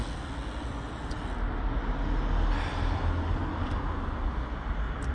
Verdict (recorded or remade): recorded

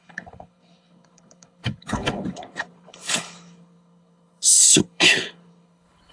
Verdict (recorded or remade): remade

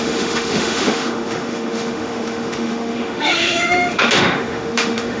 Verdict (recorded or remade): remade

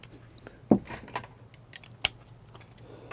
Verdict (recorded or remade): recorded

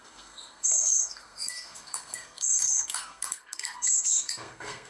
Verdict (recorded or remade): remade